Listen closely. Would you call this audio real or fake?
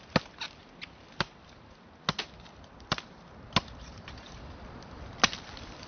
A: real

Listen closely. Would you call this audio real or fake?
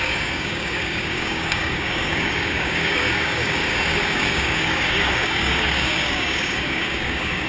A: fake